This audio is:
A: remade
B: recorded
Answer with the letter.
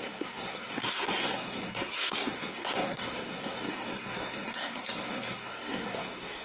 A